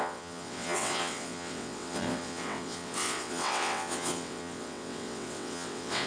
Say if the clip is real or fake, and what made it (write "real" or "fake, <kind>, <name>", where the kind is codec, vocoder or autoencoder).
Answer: fake, vocoder, WaveNeXt